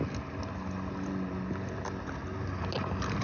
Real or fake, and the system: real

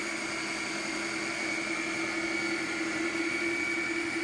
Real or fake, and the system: real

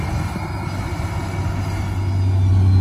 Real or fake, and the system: real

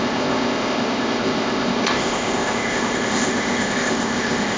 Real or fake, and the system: fake, codec, ZipCodec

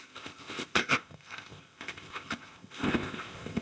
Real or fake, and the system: fake, codec, ZipCodec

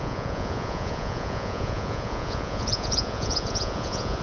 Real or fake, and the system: fake, vocoder, Vocos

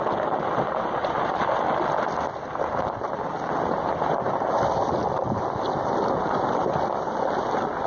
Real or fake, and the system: real